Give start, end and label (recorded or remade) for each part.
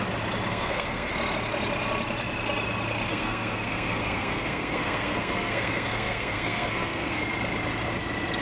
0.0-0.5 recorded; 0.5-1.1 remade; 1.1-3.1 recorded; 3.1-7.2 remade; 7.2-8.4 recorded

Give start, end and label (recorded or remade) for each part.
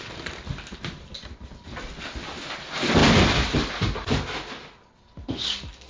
0.0-5.9 recorded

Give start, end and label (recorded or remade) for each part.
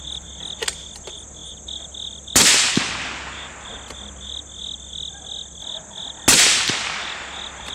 0.0-7.7 recorded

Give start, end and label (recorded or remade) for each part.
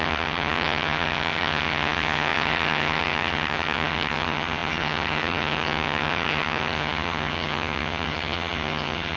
0.0-9.2 remade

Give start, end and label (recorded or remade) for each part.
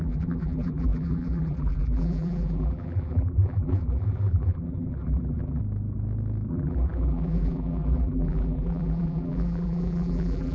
0.0-5.6 remade; 5.6-6.5 recorded; 6.5-10.5 remade